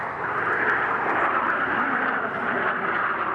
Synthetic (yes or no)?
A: no